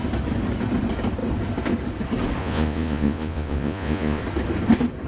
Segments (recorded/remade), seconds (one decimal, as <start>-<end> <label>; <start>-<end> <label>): 0.0-2.4 recorded; 2.4-4.2 remade; 4.2-5.1 recorded